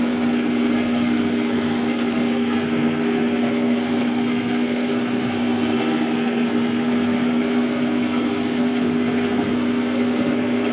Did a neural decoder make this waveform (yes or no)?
yes